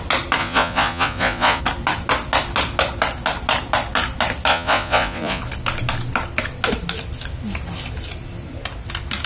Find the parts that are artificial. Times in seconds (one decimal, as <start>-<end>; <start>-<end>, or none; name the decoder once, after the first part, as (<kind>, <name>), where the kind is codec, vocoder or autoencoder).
0.4-1.6 (vocoder, Vocos); 4.5-5.4

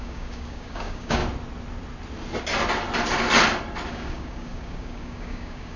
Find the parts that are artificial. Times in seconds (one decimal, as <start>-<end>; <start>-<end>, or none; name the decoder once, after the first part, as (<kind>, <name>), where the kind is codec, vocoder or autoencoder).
0.0-1.2 (codec, DAC); 3.9-5.8

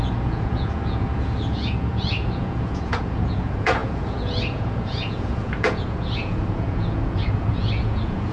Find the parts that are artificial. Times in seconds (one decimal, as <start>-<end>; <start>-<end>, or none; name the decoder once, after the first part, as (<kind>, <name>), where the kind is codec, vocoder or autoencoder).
0.0-8.3 (vocoder, Vocos)

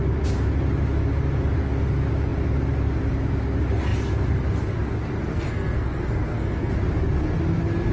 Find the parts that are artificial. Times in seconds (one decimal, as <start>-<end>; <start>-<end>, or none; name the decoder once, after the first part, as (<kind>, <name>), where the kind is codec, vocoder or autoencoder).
5.3-6.7 (codec, SNAC)

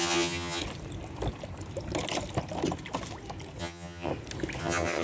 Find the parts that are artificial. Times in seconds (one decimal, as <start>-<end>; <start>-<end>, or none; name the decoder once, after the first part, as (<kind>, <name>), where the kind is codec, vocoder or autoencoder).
0.0-0.6 (vocoder, HiFi-GAN); 3.6-4.1; 4.6-5.0